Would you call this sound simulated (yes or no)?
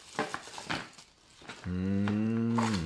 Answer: no